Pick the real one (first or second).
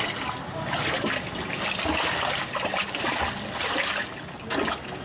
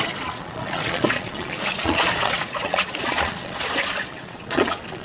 first